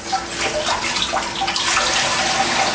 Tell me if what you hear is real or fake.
real